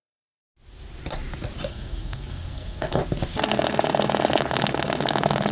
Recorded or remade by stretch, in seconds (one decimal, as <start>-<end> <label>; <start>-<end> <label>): 0.0-0.4 remade; 0.4-1.7 recorded; 1.7-3.0 remade; 3.0-5.5 recorded